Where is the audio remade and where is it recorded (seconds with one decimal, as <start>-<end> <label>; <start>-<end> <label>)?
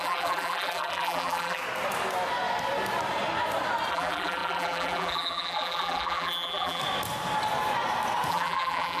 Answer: 0.0-1.6 remade; 1.6-3.9 recorded; 3.9-6.8 remade; 6.8-8.3 recorded; 8.3-9.0 remade